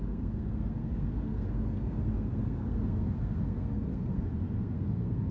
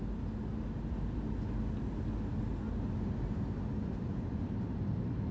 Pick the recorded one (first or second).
second